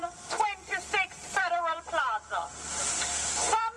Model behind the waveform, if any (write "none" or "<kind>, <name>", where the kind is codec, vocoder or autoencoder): vocoder, BigVGAN v2